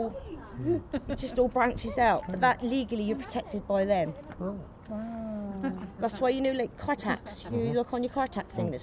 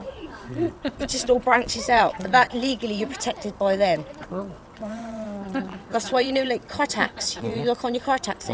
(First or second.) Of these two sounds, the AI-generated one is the second